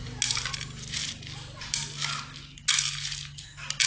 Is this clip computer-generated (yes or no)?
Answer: no